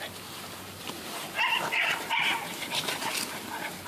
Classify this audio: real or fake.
real